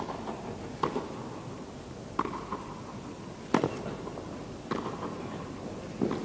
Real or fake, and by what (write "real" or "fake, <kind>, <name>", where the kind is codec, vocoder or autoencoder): real